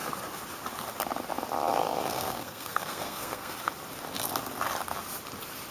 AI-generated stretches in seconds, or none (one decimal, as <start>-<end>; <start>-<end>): 1.8-3.7